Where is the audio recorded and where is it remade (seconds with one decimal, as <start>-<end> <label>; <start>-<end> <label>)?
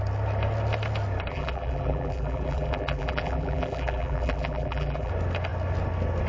0.0-1.3 recorded; 1.3-5.1 remade; 5.1-6.3 recorded